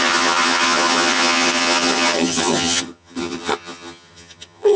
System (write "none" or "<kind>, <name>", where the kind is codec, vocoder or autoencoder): vocoder, HiFi-GAN